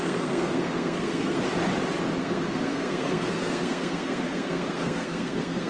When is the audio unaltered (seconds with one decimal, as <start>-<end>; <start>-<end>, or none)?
1.4-2.2